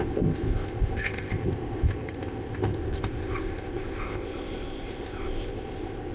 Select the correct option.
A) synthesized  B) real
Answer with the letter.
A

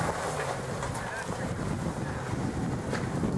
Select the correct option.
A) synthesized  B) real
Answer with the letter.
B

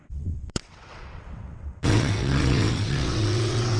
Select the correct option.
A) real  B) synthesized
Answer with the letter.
B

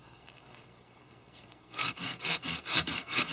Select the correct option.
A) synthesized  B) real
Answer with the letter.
A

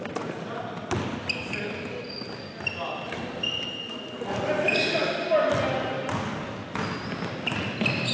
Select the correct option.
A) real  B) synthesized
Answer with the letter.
A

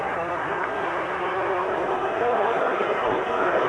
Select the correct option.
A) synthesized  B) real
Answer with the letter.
A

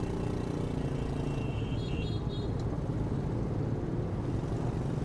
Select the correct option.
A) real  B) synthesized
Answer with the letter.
A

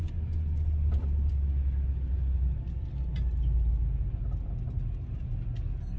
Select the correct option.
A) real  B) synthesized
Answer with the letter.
A